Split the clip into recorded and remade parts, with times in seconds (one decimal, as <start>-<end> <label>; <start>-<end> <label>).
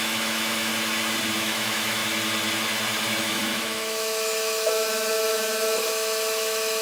0.0-0.7 remade; 0.7-1.4 recorded; 1.4-2.0 remade; 2.0-3.2 recorded; 3.2-6.8 remade